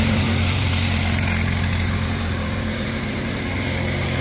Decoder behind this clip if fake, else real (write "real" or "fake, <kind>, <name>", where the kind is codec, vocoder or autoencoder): fake, vocoder, BigVGAN v2